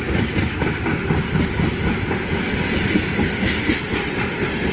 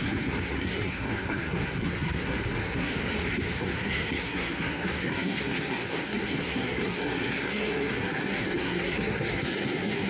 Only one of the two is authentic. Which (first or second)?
first